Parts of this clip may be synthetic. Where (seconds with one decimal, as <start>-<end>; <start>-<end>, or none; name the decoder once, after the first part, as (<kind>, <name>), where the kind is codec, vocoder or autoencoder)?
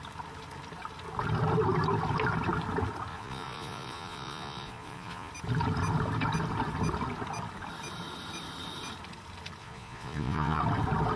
3.1-5.3 (vocoder, Vocos); 9.6-10.6